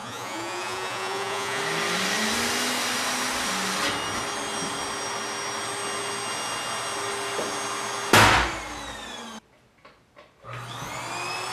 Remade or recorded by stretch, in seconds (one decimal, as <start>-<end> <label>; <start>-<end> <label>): 0.0-1.6 remade; 1.6-11.5 recorded